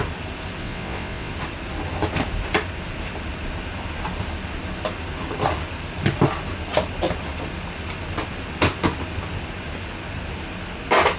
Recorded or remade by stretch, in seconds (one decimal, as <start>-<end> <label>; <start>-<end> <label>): 0.0-0.6 recorded; 0.6-1.3 remade; 1.3-11.2 recorded